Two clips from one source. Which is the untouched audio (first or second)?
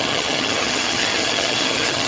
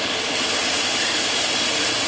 second